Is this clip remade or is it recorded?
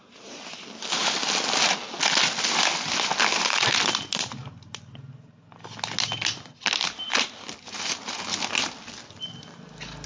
recorded